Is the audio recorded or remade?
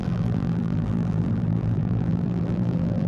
remade